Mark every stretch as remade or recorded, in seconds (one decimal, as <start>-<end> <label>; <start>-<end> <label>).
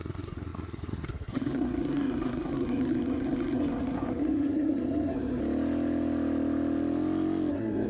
0.0-5.4 remade; 5.4-7.5 recorded; 7.5-7.9 remade